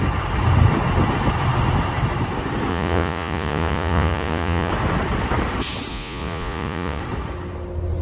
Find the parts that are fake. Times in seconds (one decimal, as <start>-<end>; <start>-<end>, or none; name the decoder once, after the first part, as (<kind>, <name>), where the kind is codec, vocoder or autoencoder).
2.7-4.7 (vocoder, Vocos); 5.9-7.0